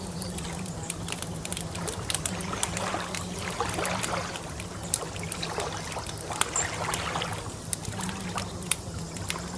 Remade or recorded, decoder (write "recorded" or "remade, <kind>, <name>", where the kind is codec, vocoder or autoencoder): recorded